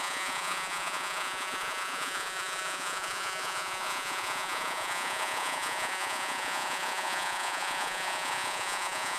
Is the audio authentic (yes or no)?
no